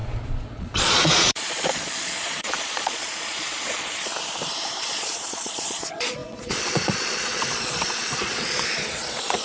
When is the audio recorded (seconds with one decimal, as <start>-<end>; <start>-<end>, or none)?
4.1-4.8